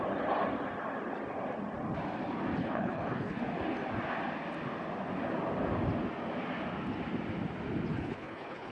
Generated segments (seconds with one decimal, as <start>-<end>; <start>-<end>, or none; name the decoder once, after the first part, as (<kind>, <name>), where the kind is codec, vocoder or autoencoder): 2.6-3.4 (codec, HILCodec); 7.9-8.7